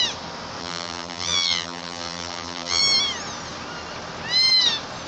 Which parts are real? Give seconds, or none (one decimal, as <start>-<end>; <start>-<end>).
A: 0.0-0.6; 2.8-5.1